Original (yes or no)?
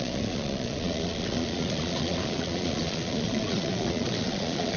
no